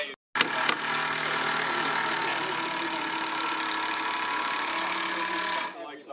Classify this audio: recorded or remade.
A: recorded